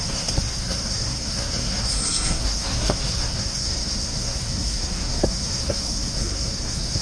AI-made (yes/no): yes